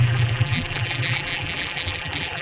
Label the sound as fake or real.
fake